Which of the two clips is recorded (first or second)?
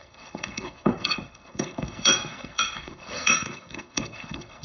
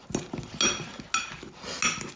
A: second